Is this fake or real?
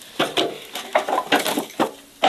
real